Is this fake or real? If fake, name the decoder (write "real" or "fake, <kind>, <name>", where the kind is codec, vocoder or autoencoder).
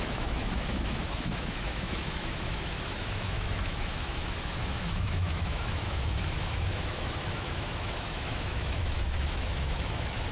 fake, autoencoder, DAC-VAE